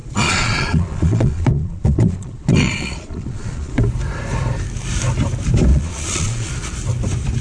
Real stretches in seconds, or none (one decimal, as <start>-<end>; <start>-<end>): 3.8-5.7; 6.5-7.4